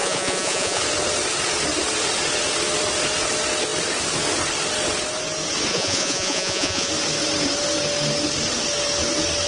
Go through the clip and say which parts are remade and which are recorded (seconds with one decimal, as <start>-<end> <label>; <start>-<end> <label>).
0.0-0.8 remade; 0.8-5.7 recorded; 5.7-6.9 remade; 6.9-9.5 recorded